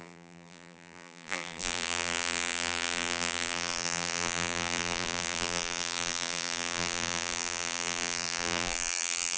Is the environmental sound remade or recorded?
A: remade